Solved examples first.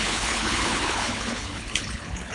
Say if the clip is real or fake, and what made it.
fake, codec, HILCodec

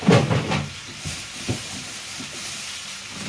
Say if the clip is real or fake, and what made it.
real